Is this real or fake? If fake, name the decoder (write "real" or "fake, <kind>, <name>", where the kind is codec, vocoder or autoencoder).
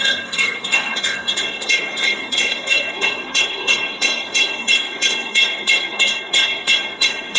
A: fake, codec, SNAC